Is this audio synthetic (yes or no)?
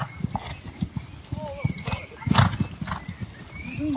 no